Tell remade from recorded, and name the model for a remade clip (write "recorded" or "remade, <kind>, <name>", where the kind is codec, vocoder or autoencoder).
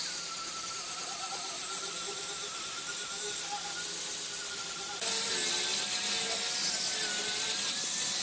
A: recorded